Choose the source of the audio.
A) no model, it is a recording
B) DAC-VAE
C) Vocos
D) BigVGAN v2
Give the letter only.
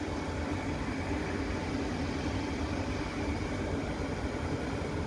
A